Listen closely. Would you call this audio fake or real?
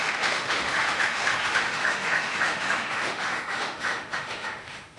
fake